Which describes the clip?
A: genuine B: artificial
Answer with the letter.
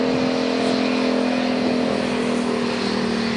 A